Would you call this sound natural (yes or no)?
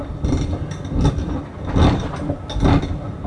yes